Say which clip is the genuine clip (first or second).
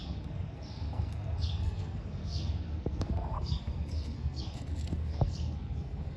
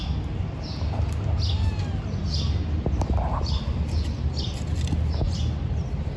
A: second